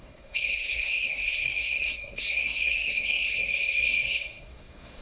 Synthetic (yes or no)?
yes